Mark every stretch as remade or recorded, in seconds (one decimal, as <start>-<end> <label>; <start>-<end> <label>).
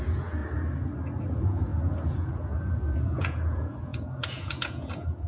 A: 0.0-0.4 remade; 0.4-1.2 recorded; 1.2-5.3 remade